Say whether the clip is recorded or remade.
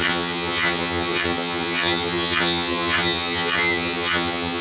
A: remade